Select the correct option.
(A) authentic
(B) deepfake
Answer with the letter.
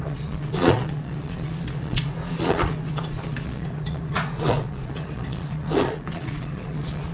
B